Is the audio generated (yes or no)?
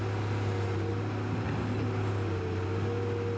no